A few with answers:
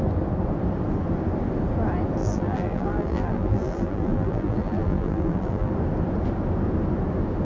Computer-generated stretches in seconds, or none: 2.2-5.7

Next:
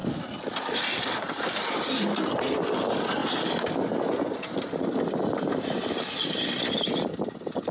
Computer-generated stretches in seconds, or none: none

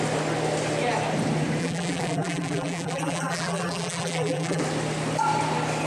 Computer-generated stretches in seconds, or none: 1.6-4.6

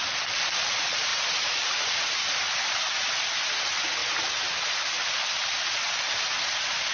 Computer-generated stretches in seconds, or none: 1.1-2.9; 4.0-4.5